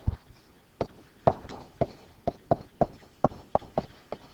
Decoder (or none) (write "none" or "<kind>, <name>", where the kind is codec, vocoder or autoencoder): none